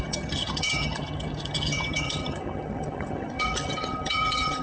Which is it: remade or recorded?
remade